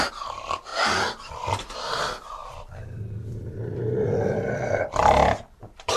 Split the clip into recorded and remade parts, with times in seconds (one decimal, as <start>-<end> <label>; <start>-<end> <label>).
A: 0.0-0.7 recorded; 0.7-1.3 remade; 1.3-2.4 recorded; 2.4-6.0 remade